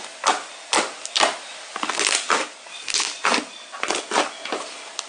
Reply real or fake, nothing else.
real